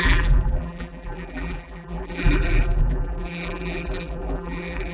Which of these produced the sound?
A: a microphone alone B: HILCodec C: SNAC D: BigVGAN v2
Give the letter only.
D